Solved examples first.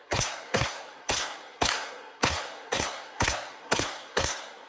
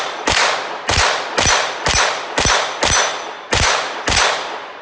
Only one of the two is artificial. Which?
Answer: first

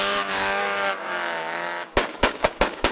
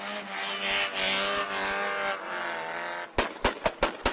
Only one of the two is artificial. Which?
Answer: first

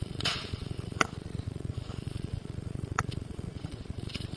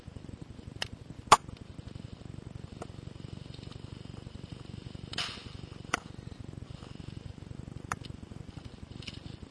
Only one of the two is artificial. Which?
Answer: first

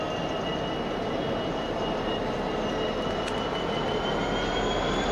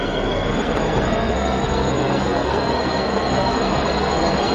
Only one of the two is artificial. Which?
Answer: second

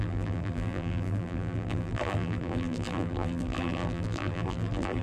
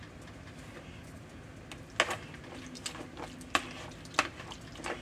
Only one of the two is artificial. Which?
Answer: first